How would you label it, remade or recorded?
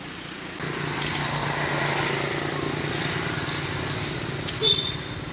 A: recorded